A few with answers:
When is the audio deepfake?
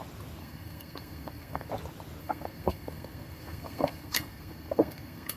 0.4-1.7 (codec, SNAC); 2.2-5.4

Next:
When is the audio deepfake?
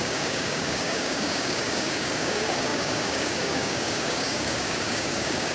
0.0-5.5 (codec, DAC)